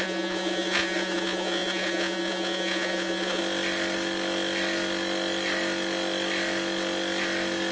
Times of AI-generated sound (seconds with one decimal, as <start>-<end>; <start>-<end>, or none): 0.0-3.4